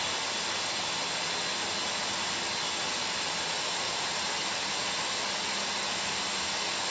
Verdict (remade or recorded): recorded